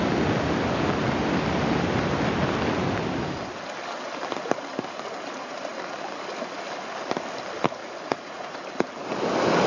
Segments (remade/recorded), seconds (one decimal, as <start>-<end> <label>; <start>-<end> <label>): 0.0-7.8 recorded; 7.8-8.6 remade; 8.6-9.7 recorded

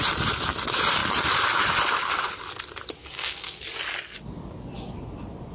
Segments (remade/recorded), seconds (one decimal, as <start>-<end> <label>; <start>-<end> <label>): 0.0-3.0 recorded; 3.0-3.6 remade; 3.6-5.5 recorded

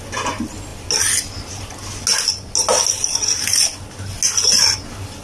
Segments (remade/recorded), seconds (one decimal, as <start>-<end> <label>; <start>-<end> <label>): 0.0-5.2 recorded

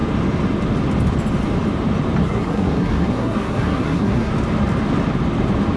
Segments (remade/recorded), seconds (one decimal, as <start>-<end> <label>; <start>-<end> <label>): 0.0-2.2 recorded; 2.2-4.3 remade; 4.3-5.8 recorded

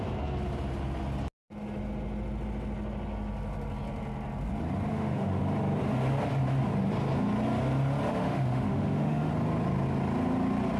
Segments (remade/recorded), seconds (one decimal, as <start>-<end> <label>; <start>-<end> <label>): 0.0-4.9 recorded; 4.9-5.4 remade; 5.4-8.1 recorded; 8.1-9.3 remade; 9.3-10.8 recorded

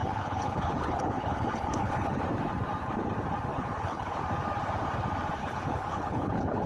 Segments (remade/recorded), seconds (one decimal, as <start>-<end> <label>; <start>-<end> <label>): 0.0-2.2 remade; 2.2-3.5 recorded; 3.5-4.2 remade; 4.2-5.4 recorded; 5.4-6.7 remade

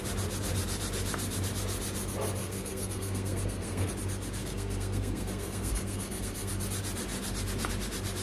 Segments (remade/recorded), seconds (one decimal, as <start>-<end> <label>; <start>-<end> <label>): 0.0-2.4 recorded; 2.4-3.9 remade; 3.9-4.4 recorded; 4.4-6.5 remade; 6.5-8.2 recorded

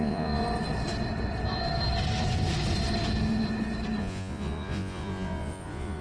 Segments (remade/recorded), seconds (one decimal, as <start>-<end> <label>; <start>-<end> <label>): 0.0-0.4 remade; 0.4-4.0 recorded; 4.0-6.0 remade